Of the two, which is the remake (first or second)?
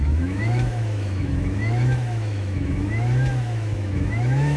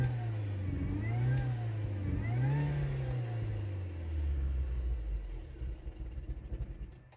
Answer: first